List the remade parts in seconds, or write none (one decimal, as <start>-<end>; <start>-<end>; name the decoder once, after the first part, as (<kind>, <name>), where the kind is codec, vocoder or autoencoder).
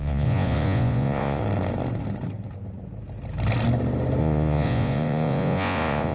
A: 0.0-1.4 (vocoder, Vocos); 4.2-6.1